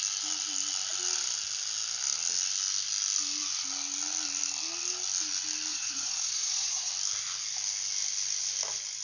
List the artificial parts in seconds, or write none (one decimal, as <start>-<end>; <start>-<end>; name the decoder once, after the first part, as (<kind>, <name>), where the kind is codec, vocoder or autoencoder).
5.7-6.9 (vocoder, Vocos)